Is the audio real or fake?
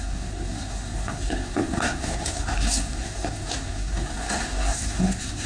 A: fake